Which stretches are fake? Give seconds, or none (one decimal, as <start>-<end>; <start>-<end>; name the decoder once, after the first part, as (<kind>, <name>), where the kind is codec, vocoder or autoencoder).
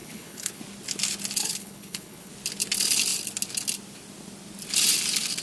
0.0-0.6 (codec, HILCodec); 1.4-2.3